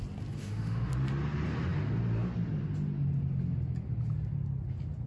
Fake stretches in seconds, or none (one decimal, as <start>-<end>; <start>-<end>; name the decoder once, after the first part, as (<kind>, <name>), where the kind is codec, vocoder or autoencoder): 0.4-0.9 (autoencoder, DAC-VAE)